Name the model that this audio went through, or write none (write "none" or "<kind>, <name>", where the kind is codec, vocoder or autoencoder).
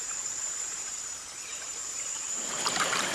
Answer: vocoder, BigVGAN v2